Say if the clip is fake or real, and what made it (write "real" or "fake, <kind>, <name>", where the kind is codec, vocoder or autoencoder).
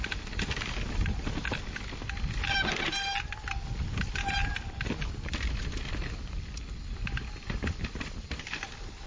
real